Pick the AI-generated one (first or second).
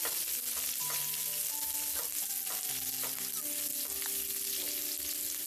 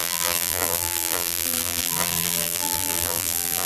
second